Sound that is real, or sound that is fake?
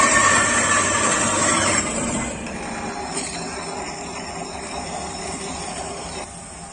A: real